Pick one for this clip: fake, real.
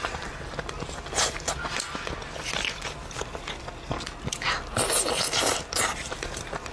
real